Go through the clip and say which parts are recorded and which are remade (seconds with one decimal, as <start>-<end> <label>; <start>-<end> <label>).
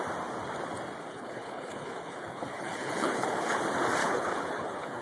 0.0-1.1 recorded; 1.1-3.6 remade; 3.6-4.0 recorded; 4.0-5.0 remade